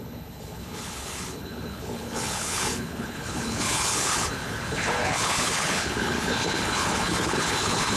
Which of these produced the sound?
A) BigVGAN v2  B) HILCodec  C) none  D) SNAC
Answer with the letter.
B